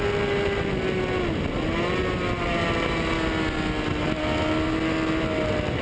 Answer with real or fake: real